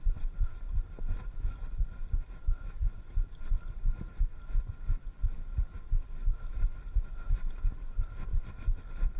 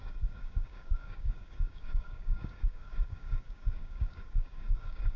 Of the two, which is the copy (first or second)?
second